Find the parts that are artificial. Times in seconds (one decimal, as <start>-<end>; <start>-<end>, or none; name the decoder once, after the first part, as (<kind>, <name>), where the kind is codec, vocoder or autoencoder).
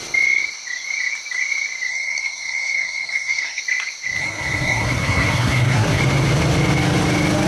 1.9-3.6 (codec, SNAC); 4.2-6.0